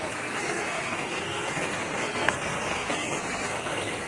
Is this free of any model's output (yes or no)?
no